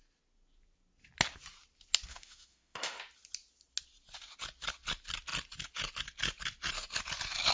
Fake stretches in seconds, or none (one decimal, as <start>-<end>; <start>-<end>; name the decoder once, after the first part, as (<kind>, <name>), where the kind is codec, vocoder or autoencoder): 2.1-3.0 (autoencoder, DAC-VAE)